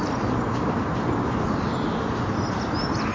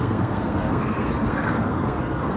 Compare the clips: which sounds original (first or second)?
first